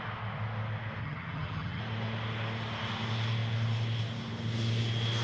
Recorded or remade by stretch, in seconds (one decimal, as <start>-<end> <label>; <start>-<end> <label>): 0.0-1.0 recorded; 1.0-1.8 remade; 1.8-5.2 recorded